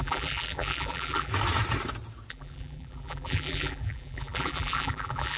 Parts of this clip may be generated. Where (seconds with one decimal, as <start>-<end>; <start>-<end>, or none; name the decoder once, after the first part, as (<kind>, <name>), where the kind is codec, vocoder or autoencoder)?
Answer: 0.0-1.3 (vocoder, BigVGAN v2); 2.3-5.4

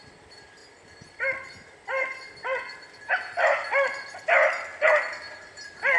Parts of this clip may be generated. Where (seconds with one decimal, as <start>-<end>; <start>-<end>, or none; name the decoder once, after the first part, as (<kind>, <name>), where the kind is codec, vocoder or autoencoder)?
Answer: none

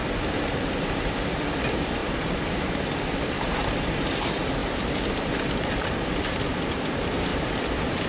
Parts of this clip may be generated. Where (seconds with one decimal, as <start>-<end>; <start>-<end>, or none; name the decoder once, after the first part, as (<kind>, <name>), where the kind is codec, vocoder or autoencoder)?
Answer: 0.6-4.6 (vocoder, BigVGAN v2); 6.7-7.3